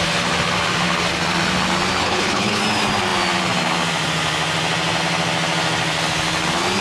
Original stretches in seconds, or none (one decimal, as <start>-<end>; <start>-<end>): 0.0-2.0; 2.6-6.8